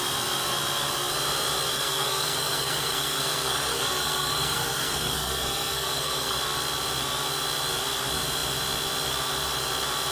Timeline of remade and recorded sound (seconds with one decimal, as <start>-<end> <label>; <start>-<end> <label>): 0.0-1.7 recorded; 1.7-6.4 remade; 6.4-10.1 recorded

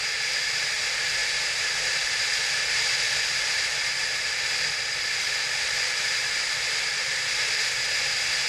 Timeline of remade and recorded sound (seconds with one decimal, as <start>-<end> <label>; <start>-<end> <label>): 0.0-8.5 recorded

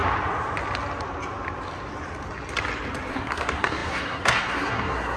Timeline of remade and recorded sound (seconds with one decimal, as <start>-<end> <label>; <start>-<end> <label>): 0.0-3.1 recorded; 3.1-5.2 remade

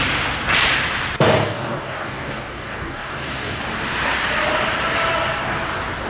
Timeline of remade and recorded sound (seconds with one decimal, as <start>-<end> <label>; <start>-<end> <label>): 0.0-1.4 recorded; 1.4-3.6 remade; 3.6-6.1 recorded